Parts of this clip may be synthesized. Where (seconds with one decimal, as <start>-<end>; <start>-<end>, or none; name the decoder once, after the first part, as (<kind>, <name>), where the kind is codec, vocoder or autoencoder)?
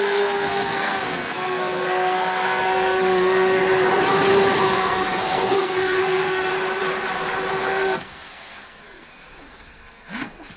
0.0-3.6 (codec, SNAC); 4.6-6.5; 7.5-10.6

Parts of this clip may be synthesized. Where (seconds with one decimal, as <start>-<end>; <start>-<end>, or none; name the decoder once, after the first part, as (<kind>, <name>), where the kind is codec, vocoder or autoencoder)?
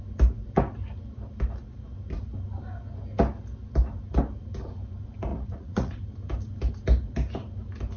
5.3-5.9 (vocoder, Vocos)